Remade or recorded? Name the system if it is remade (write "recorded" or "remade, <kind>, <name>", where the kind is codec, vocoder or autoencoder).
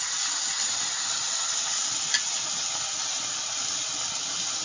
recorded